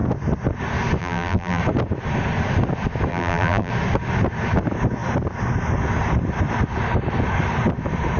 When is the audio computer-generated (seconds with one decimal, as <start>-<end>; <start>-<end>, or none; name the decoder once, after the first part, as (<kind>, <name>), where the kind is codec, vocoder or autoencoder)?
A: 1.0-1.6 (vocoder, BigVGAN v2); 3.1-3.7